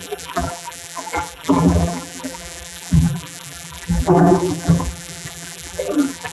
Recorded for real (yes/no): no